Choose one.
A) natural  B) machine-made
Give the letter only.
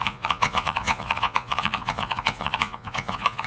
B